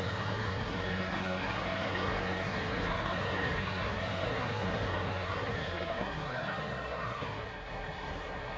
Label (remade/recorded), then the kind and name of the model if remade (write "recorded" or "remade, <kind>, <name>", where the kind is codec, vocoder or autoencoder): remade, codec, SNAC